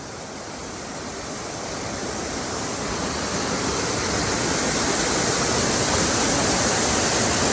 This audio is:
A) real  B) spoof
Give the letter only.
A